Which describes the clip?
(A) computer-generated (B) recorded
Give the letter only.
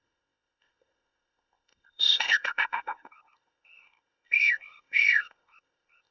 A